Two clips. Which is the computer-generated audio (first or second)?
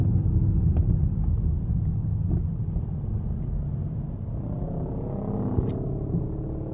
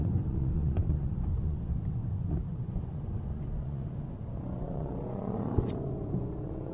second